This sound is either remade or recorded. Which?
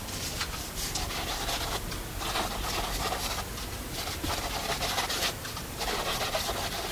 recorded